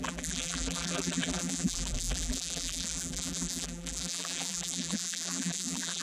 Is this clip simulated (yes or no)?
yes